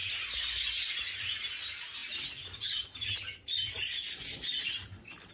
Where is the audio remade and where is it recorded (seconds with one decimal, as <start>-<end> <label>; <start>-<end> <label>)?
0.0-5.3 recorded